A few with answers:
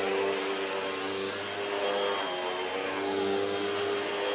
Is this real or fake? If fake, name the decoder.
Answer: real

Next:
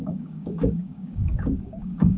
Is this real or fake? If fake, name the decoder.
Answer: fake, codec, DAC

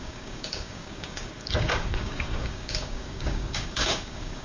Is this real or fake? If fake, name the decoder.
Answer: fake, codec, DAC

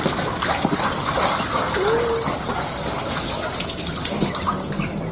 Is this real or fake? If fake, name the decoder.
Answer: real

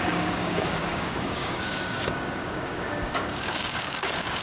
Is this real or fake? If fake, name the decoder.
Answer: fake, codec, DAC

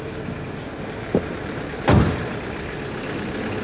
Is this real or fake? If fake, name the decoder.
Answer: real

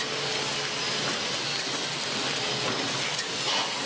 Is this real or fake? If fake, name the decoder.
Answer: real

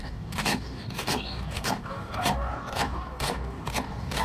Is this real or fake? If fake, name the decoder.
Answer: fake, codec, DAC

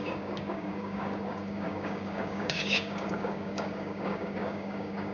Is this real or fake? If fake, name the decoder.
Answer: fake, codec, DAC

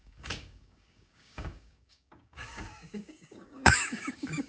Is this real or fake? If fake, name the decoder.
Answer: fake, codec, DAC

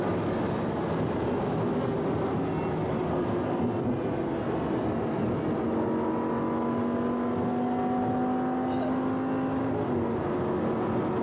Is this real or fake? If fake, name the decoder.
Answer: real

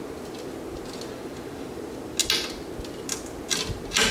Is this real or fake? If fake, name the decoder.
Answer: real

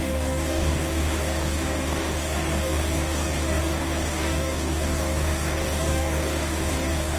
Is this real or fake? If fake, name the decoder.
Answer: fake, codec, DAC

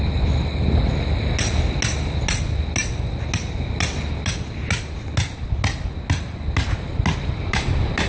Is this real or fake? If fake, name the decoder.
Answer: real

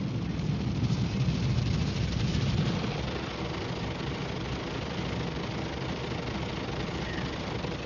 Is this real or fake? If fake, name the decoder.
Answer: real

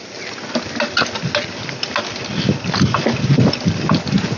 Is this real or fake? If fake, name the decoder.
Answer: real